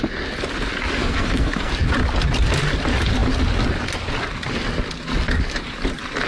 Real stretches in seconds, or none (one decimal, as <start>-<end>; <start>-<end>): 0.0-1.0; 1.7-6.3